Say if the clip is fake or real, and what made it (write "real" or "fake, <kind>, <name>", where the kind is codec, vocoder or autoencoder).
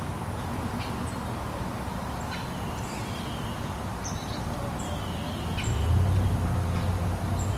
real